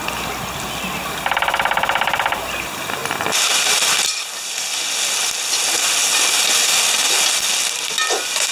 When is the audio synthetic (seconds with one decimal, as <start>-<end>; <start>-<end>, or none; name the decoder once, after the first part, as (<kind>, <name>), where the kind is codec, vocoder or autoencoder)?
none